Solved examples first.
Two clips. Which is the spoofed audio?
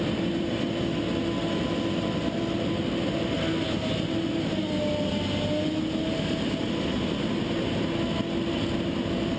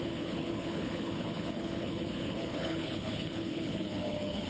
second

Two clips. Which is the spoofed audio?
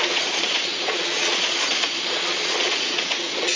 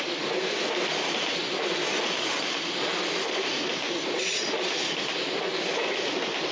first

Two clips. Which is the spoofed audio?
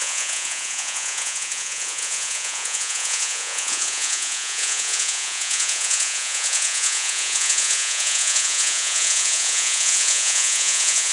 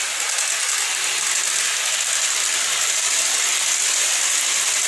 first